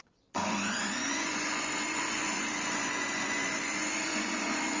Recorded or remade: remade